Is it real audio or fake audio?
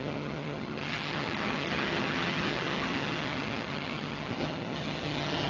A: fake